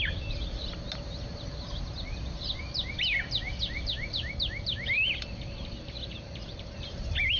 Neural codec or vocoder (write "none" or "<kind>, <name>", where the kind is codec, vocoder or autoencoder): none